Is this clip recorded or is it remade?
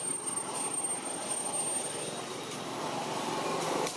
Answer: recorded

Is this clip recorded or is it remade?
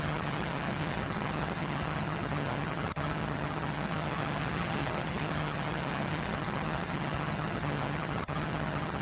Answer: remade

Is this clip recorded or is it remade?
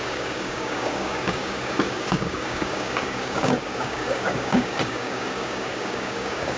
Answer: remade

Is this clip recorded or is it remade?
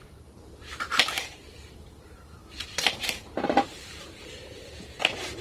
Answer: remade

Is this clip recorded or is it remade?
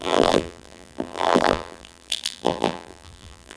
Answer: remade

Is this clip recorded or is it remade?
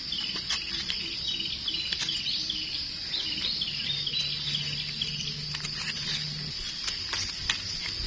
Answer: recorded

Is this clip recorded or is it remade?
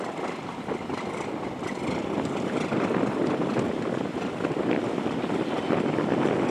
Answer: recorded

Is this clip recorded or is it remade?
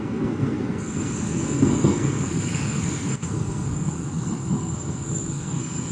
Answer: remade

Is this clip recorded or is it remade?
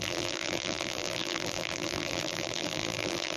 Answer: remade